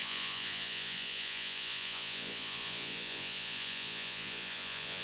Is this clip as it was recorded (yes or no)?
no